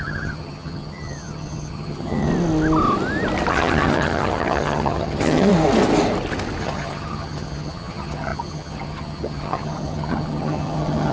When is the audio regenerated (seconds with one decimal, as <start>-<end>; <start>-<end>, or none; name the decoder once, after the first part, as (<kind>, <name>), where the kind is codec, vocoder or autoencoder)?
0.0-2.3 (vocoder, HiFi-GAN); 3.5-5.5; 6.6-11.1

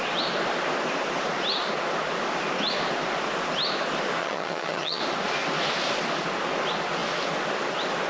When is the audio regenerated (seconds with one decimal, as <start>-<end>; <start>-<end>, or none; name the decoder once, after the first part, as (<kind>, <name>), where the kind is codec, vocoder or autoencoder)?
4.2-5.0 (vocoder, HiFi-GAN)

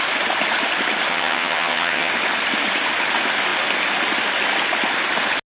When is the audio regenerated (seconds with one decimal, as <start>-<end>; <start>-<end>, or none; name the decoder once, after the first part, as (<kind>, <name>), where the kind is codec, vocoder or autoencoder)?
1.1-2.1 (vocoder, HiFi-GAN)

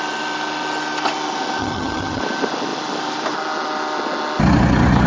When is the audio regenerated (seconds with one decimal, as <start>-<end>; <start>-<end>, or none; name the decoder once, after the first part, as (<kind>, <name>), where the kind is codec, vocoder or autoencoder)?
1.6-2.2 (vocoder, HiFi-GAN)

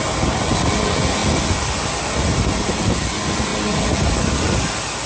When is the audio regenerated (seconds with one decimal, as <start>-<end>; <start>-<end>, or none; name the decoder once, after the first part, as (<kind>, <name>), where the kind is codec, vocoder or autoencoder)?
none

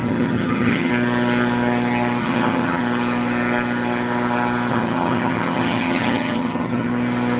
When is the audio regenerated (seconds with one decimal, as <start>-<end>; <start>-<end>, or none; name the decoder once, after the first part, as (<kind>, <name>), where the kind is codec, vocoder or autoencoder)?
0.0-0.9 (vocoder, HiFi-GAN); 2.2-2.8; 4.7-6.9